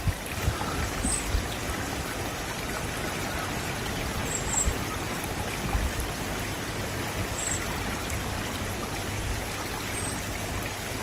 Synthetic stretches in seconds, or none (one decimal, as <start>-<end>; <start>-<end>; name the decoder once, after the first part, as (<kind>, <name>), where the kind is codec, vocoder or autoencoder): none